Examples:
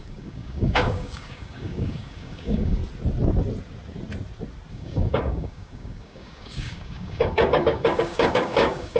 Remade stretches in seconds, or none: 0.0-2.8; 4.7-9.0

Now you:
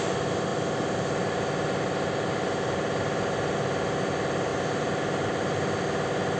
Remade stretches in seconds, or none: none

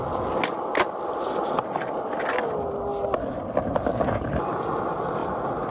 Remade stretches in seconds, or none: none

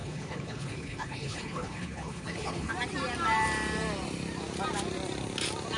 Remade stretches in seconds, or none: 0.0-2.7